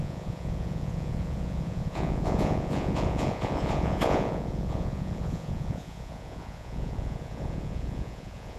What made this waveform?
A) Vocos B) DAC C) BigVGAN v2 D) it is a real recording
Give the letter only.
A